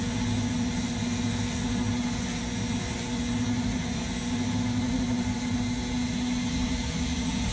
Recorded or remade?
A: recorded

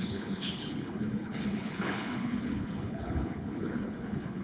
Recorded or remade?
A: remade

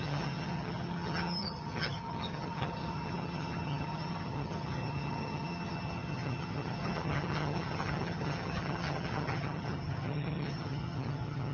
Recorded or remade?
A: remade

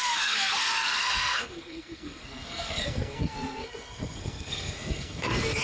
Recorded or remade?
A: remade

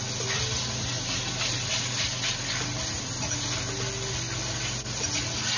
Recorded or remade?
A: recorded